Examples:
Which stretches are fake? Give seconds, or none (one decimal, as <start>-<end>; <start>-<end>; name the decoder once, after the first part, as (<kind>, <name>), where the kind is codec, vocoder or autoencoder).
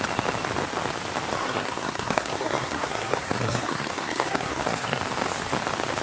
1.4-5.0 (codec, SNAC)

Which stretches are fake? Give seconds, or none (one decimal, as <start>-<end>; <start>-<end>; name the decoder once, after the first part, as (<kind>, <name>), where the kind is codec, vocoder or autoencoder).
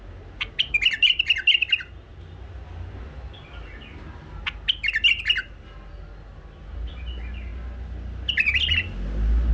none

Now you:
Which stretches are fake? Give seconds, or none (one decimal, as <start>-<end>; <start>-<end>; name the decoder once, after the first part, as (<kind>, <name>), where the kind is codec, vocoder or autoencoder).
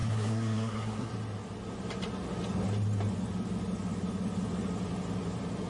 0.0-1.1 (codec, SNAC)